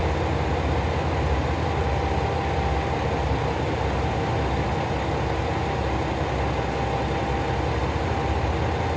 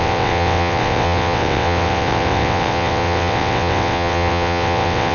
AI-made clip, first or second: second